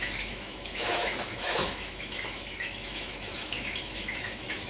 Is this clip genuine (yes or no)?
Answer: no